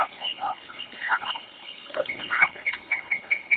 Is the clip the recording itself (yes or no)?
no